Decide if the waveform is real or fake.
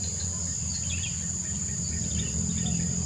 real